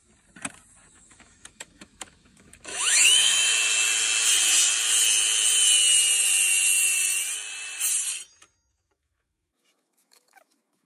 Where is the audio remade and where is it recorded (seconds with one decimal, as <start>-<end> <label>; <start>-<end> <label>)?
0.0-0.9 recorded; 0.9-3.5 remade; 3.5-8.7 recorded; 8.7-10.8 remade